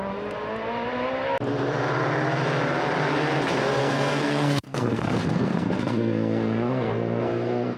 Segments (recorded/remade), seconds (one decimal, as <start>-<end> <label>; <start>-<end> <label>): 0.0-3.8 recorded; 3.8-7.8 remade